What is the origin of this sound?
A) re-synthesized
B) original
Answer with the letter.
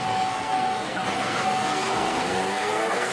A